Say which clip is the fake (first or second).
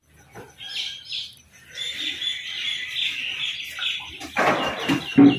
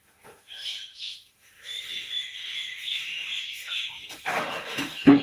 second